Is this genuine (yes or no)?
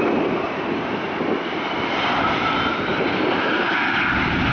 yes